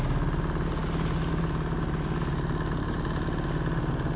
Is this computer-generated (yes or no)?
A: no